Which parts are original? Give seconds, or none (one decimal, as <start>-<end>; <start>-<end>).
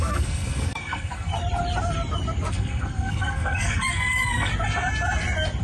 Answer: 1.3-2.5; 4.5-5.6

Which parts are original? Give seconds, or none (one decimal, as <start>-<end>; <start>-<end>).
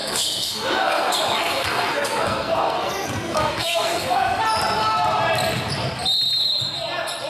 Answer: 4.4-7.3